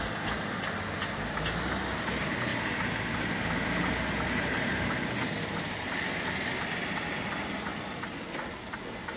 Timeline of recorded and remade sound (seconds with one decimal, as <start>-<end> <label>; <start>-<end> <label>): 0.0-9.2 recorded